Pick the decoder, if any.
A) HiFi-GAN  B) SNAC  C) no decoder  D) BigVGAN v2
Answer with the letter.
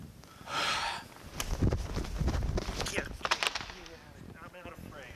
C